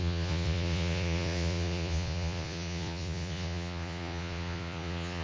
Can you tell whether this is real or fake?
fake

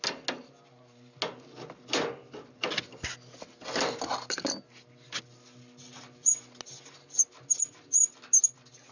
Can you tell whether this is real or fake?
real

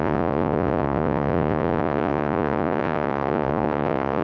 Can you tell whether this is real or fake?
fake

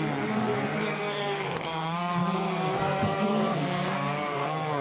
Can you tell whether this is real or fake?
fake